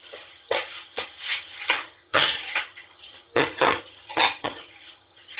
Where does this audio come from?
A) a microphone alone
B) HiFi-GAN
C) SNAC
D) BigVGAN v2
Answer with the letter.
B